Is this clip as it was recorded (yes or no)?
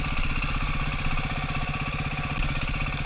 yes